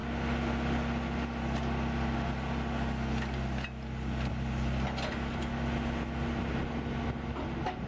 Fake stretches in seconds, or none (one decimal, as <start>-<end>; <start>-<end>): none